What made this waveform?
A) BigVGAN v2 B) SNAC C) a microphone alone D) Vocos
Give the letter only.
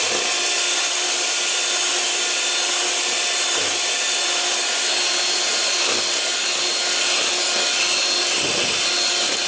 C